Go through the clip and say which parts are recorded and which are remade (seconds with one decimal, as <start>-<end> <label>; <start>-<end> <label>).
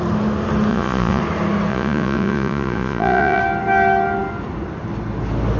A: 0.0-0.7 recorded; 0.7-1.2 remade; 1.2-1.7 recorded; 1.7-3.4 remade; 3.4-5.6 recorded